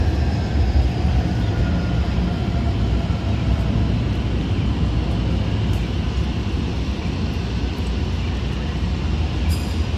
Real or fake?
real